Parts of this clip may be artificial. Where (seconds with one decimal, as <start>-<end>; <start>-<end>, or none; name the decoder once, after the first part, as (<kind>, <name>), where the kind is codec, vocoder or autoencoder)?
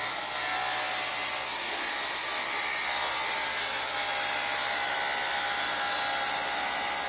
none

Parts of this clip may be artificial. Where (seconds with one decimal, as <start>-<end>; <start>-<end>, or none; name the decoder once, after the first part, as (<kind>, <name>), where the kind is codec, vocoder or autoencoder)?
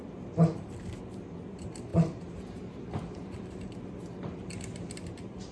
none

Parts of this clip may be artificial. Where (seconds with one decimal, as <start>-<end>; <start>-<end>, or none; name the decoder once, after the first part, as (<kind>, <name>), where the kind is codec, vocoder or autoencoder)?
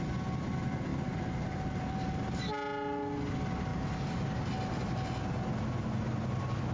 0.9-2.4 (vocoder, BigVGAN v2); 3.7-4.5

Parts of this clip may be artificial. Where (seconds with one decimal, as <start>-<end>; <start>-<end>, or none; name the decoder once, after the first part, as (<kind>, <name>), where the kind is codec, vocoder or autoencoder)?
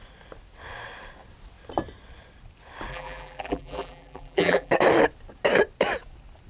2.9-4.7 (vocoder, BigVGAN v2)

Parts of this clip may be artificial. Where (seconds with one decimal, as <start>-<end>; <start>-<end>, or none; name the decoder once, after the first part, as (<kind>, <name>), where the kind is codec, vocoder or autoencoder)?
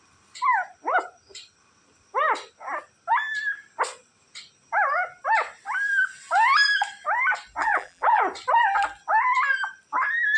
7.6-8.2 (vocoder, BigVGAN v2)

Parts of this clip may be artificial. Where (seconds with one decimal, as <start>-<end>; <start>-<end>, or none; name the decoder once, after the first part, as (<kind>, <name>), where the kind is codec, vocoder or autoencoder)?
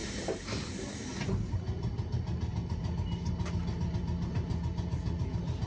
0.0-1.6 (vocoder, BigVGAN v2)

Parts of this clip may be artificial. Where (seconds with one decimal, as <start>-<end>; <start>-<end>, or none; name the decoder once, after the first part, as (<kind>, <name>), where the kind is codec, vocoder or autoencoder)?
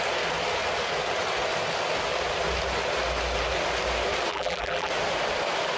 4.3-4.9 (vocoder, BigVGAN v2)